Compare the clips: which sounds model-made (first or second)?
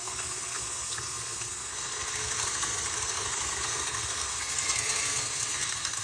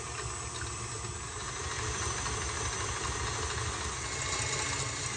first